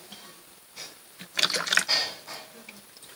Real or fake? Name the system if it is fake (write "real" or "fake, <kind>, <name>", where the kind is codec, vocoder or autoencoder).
fake, vocoder, BigVGAN v2